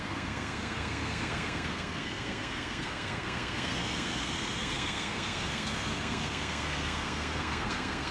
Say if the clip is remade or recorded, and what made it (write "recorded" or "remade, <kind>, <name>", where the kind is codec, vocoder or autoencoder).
remade, codec, SNAC